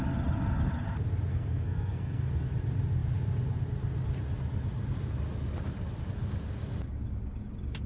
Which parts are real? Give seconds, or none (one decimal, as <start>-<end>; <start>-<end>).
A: 0.0-1.3; 2.3-7.9